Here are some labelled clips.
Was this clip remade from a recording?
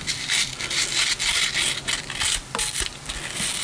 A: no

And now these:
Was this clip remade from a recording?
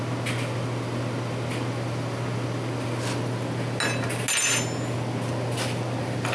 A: no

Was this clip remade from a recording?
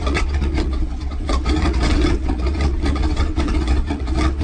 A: yes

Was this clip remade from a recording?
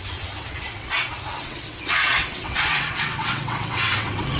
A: yes